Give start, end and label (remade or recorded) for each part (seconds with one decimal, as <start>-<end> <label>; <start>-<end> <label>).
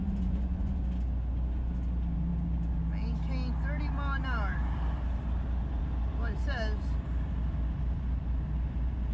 0.0-0.8 remade; 0.8-9.1 recorded